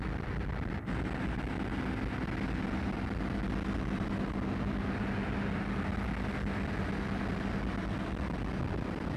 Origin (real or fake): real